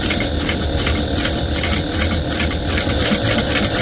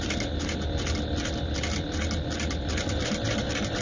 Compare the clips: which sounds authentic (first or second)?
second